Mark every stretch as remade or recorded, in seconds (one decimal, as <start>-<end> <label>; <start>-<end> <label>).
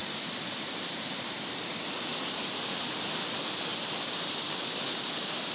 0.0-1.7 remade; 1.7-2.1 recorded; 2.1-2.8 remade; 2.8-3.7 recorded; 3.7-5.0 remade; 5.0-5.5 recorded